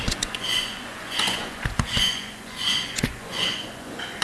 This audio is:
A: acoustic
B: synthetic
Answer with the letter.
B